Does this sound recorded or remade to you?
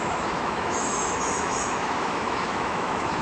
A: remade